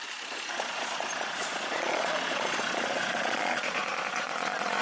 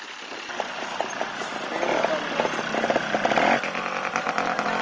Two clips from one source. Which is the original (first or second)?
second